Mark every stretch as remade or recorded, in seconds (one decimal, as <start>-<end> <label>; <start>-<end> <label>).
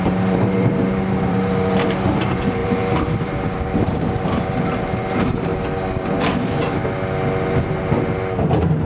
0.0-5.5 remade; 5.5-6.2 recorded; 6.2-6.8 remade; 6.8-8.4 recorded; 8.4-8.9 remade